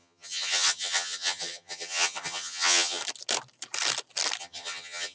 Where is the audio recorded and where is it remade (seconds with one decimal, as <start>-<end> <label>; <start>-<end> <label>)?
0.0-3.0 remade; 3.0-4.4 recorded; 4.4-5.1 remade